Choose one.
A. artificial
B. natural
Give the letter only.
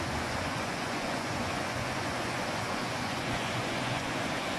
A